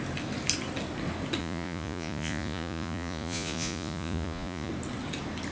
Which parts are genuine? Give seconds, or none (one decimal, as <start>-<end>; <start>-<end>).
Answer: 0.0-1.4; 4.7-5.5

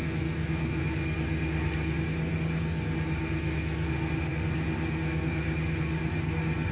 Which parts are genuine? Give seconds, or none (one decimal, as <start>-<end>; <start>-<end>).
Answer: 0.0-6.7